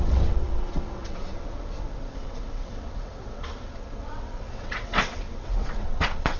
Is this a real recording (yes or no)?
no